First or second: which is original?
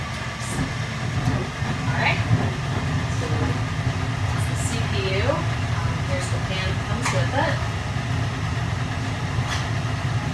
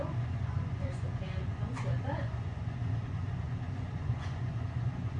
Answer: first